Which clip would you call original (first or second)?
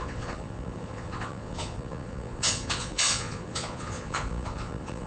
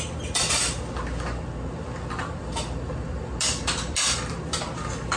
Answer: second